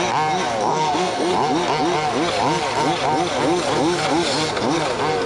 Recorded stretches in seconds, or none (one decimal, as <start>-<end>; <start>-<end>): 0.0-0.7; 1.3-5.3